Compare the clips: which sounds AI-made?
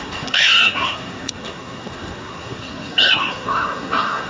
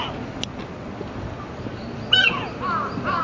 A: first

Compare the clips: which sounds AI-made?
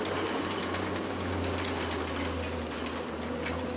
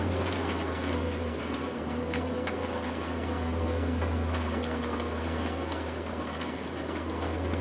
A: second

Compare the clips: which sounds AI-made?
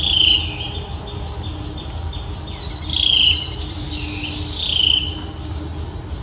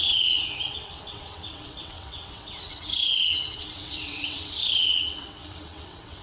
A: second